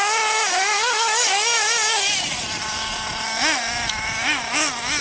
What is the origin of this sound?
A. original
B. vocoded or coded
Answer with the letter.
A